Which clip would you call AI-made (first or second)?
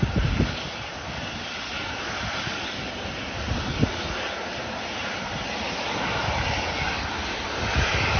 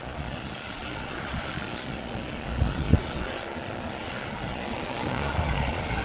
second